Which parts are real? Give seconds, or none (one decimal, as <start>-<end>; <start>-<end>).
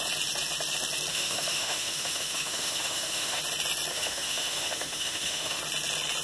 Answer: 0.0-1.1; 3.4-3.9; 5.6-6.2